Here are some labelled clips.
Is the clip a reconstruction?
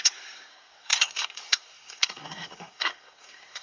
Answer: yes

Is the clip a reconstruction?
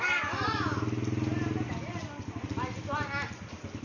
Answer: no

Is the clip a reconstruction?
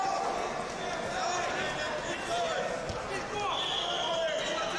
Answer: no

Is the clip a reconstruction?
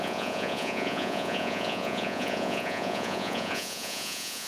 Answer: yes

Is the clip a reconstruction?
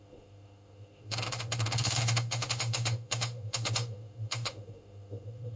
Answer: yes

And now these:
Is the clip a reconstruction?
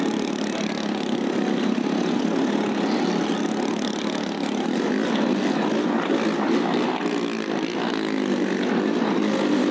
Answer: no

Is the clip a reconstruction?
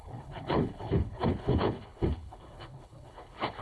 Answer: yes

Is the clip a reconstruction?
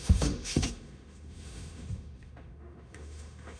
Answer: yes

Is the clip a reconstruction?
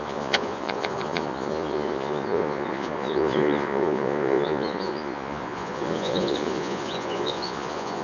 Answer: yes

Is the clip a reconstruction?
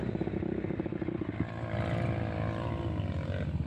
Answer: no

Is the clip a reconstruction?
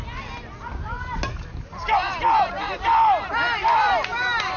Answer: no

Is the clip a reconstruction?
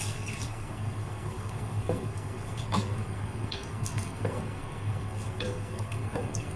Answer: yes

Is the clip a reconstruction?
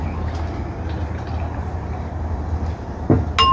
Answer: no